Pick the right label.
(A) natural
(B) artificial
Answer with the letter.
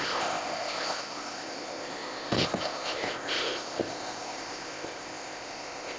B